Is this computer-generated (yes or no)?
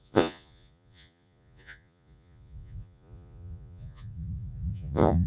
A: yes